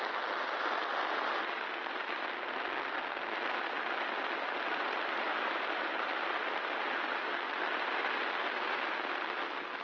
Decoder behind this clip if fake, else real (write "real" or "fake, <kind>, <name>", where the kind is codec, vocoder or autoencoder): real